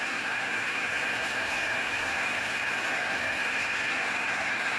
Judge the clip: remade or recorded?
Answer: remade